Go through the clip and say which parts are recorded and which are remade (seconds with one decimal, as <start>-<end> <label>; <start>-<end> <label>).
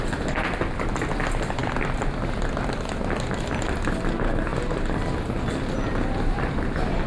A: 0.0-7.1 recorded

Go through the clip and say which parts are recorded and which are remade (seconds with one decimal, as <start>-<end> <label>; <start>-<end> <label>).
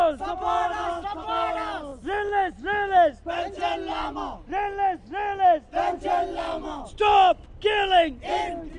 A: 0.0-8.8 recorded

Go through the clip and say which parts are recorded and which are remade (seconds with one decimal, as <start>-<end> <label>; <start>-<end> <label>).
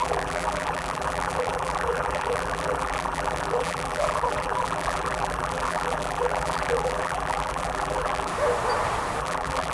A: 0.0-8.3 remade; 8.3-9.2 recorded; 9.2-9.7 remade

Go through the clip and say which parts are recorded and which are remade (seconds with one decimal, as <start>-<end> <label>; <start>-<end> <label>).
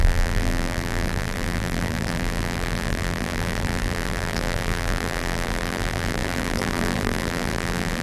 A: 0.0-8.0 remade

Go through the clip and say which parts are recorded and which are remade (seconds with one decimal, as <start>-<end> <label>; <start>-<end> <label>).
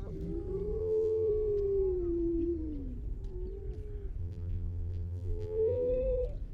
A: 0.0-0.8 recorded; 0.8-1.3 remade; 1.3-4.2 recorded; 4.2-5.9 remade; 5.9-6.5 recorded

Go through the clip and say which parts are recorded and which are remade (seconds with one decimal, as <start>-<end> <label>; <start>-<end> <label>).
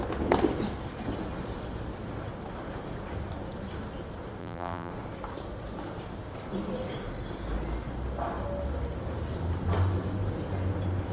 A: 0.0-4.4 recorded; 4.4-4.9 remade; 4.9-11.1 recorded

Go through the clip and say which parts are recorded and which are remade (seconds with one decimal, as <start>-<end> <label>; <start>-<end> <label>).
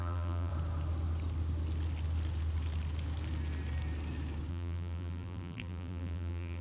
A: 0.0-0.5 remade; 0.5-4.5 recorded; 4.5-6.6 remade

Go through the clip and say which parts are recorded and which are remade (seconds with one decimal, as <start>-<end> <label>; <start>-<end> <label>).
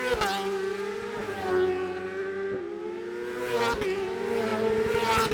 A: 0.0-4.5 recorded; 4.5-5.3 remade